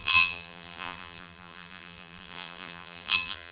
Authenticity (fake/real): fake